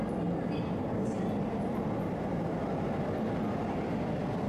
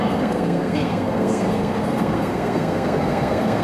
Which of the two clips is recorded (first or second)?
first